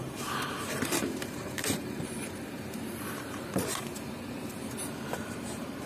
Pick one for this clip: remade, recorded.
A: remade